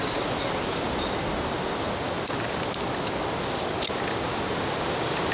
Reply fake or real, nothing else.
real